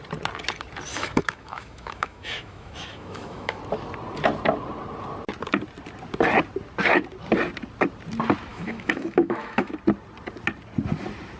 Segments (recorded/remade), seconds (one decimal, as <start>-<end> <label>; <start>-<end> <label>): 0.0-0.9 recorded; 0.9-3.6 remade; 3.6-8.5 recorded; 8.5-9.7 remade; 9.7-11.4 recorded